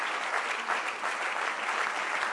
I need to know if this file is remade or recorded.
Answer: recorded